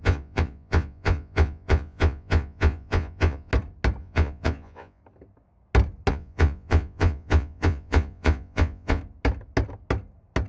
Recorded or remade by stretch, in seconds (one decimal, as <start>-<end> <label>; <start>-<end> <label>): 0.0-3.5 remade; 3.5-4.0 recorded; 4.0-5.0 remade; 5.0-6.1 recorded; 6.1-9.0 remade; 9.0-10.5 recorded